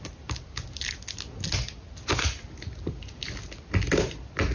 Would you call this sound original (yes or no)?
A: yes